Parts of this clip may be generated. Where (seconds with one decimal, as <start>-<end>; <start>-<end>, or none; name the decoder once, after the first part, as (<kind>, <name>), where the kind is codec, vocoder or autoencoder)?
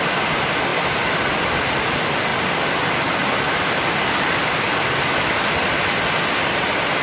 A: 0.7-1.4 (vocoder, BigVGAN v2); 2.3-4.9